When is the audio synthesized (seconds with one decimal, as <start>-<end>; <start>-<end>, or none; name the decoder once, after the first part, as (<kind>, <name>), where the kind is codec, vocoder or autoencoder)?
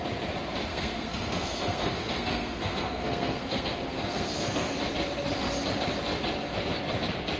0.7-4.8 (codec, SNAC)